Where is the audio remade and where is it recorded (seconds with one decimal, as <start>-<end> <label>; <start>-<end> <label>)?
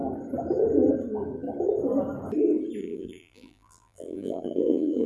0.0-2.8 recorded; 2.8-5.1 remade